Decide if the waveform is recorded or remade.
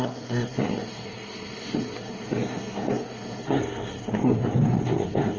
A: remade